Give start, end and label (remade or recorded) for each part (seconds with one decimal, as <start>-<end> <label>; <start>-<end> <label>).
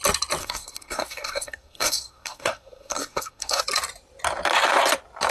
0.0-0.4 recorded; 0.4-3.6 remade; 3.6-5.3 recorded